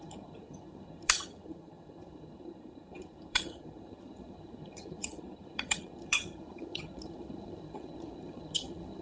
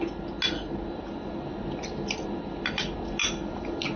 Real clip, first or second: second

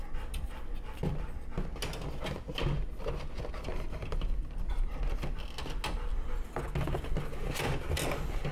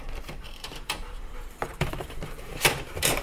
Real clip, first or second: first